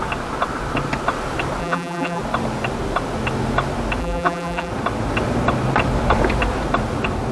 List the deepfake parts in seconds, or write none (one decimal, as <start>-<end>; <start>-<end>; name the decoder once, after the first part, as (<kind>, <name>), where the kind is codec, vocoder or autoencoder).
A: 1.6-2.2 (vocoder, BigVGAN v2); 4.0-4.7